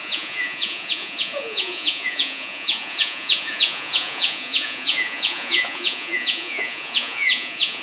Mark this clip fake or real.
fake